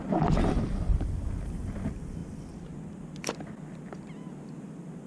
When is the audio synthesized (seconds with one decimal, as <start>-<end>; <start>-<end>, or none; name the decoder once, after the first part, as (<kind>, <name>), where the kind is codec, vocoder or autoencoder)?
none